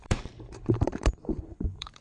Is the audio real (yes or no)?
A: no